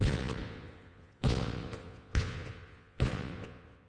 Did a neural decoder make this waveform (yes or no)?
yes